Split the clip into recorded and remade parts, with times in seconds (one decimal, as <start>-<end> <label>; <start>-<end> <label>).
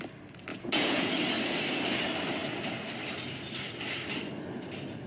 0.0-0.5 recorded; 0.5-1.1 remade; 1.1-5.1 recorded